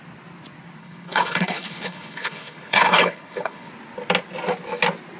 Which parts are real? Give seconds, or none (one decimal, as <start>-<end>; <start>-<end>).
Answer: 0.0-0.8; 3.7-5.2